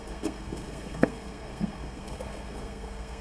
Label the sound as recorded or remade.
remade